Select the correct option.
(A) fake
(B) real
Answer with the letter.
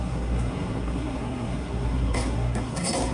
A